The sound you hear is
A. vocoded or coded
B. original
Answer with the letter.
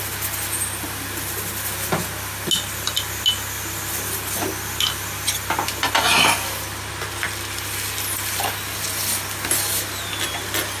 B